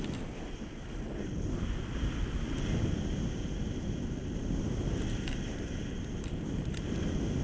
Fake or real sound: real